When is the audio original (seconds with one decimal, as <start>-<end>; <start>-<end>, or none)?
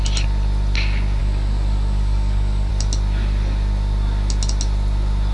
0.0-1.2; 2.7-5.3